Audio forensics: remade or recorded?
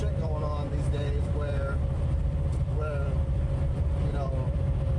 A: remade